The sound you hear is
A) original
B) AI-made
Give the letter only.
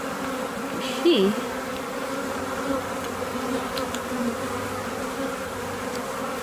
A